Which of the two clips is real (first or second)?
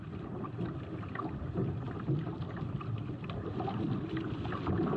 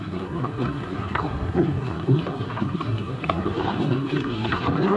first